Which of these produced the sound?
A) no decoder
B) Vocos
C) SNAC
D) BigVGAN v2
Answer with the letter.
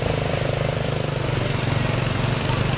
D